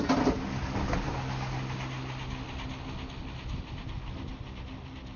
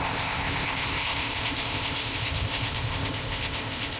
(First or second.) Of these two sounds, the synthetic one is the second